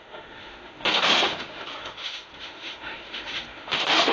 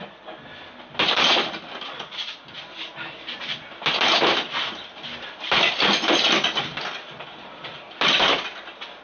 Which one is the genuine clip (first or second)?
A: second